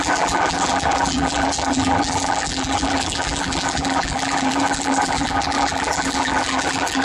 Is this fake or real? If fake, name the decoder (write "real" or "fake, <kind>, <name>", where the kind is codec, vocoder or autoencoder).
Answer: fake, vocoder, BigVGAN v2